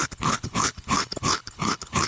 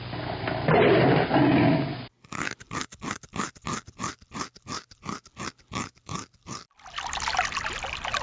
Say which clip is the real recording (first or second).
second